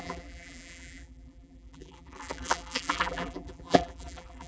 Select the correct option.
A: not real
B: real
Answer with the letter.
A